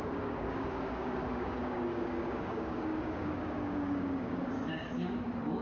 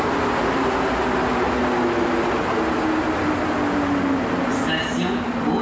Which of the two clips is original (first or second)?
second